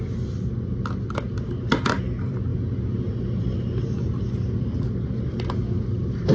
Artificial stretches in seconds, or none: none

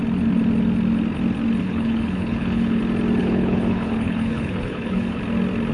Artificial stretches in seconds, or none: 1.6-2.8 (codec, HILCodec); 3.2-5.2